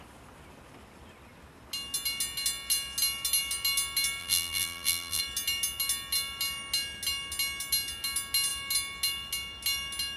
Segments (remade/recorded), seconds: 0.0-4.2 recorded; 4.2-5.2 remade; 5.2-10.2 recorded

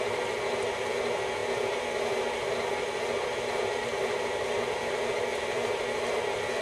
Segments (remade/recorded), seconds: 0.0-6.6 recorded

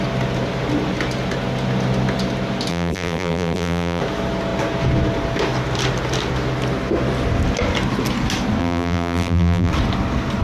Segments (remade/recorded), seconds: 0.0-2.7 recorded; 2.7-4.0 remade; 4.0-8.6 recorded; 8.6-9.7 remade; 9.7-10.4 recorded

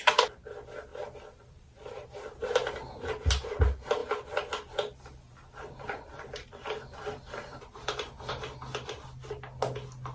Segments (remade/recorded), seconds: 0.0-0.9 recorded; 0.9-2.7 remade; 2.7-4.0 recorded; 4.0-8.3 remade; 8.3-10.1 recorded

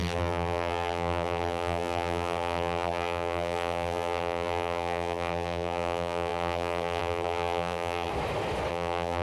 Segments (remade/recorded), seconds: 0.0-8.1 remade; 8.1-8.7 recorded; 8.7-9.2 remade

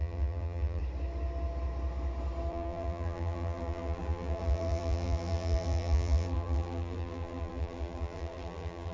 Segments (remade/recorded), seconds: 0.0-0.8 remade; 0.8-2.5 recorded; 2.5-8.9 remade

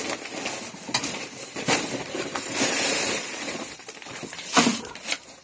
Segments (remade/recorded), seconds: 0.0-1.0 recorded; 1.0-3.6 remade; 3.6-5.4 recorded